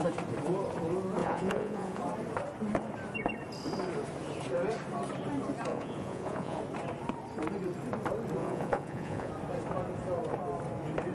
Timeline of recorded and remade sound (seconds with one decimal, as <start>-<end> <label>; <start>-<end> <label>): 0.0-1.2 recorded; 1.2-2.0 remade; 2.0-5.7 recorded; 5.7-6.6 remade; 6.6-8.4 recorded; 8.4-9.3 remade; 9.3-11.1 recorded